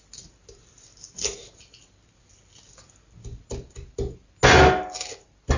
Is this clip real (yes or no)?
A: yes